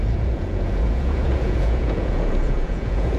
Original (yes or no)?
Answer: no